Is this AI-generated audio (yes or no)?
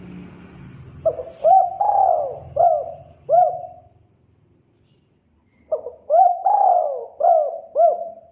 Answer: no